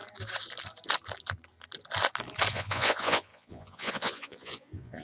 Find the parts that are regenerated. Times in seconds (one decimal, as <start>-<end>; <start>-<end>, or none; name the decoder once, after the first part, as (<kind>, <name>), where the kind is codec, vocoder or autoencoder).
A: 2.5-5.0 (vocoder, Vocos)